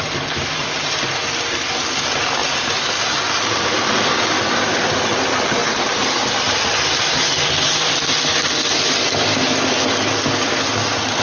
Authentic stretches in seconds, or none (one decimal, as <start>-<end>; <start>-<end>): 0.0-11.2